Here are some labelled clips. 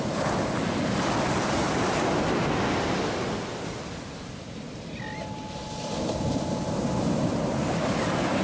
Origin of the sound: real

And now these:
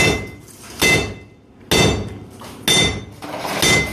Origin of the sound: real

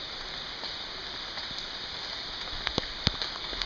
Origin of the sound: fake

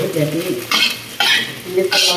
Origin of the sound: real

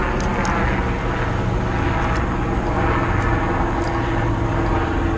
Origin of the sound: real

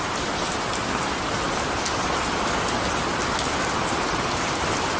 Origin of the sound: real